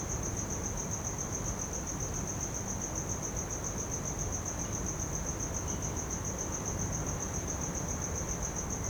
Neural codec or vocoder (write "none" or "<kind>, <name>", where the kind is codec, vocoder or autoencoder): none